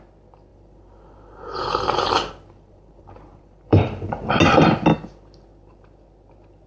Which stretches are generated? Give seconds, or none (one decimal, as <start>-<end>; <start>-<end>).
0.5-4.3